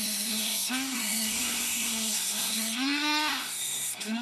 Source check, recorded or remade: remade